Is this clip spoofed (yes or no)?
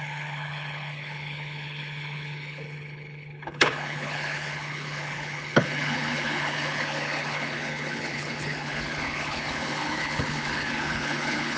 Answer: yes